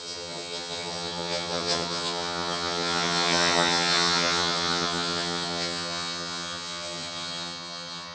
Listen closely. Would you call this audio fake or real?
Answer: fake